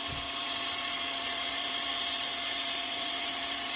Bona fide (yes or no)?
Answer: no